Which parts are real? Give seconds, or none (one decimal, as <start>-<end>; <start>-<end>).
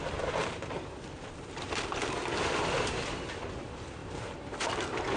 0.0-0.4; 2.0-4.0